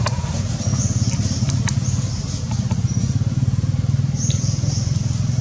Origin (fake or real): real